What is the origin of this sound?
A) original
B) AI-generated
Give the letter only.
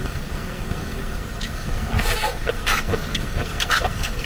B